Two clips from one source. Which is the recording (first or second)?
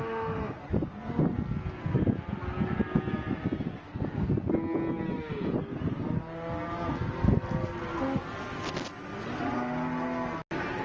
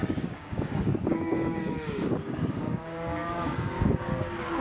first